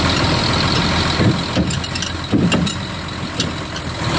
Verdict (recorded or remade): recorded